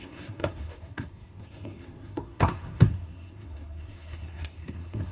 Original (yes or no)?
no